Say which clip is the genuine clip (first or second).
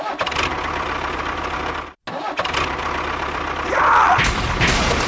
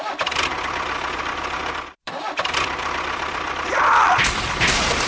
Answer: first